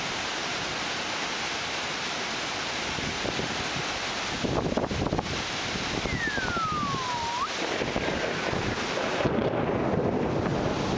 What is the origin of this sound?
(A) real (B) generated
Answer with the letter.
A